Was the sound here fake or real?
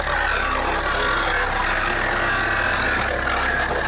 real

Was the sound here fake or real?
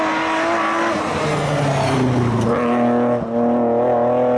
real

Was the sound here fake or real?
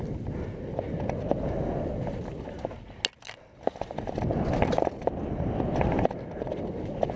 real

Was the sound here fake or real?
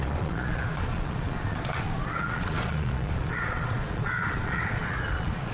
fake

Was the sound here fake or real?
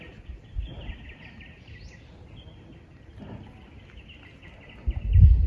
real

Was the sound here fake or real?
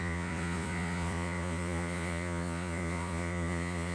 fake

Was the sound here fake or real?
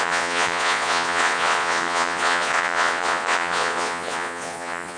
fake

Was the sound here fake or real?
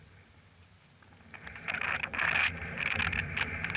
real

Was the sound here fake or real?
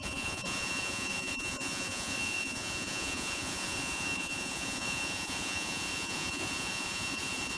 fake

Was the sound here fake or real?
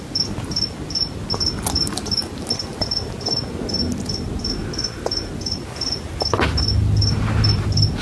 real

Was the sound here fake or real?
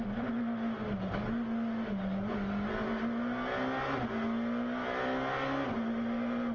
real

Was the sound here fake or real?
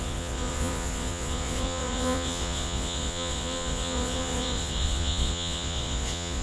fake